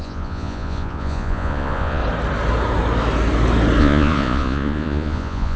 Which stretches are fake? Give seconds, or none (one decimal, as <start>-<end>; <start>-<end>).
0.0-2.0; 3.8-5.6